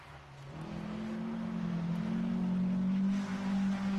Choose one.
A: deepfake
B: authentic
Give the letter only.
B